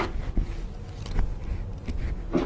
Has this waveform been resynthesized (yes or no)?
no